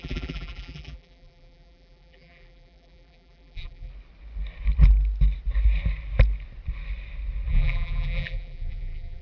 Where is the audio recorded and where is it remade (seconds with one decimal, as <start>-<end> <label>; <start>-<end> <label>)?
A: 0.0-3.9 remade; 3.9-7.5 recorded; 7.5-9.2 remade